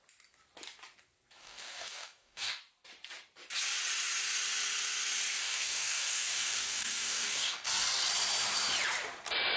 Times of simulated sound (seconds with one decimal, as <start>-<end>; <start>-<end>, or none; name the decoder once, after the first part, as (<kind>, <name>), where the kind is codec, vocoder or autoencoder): 1.4-2.6 (codec, DAC); 5.4-8.1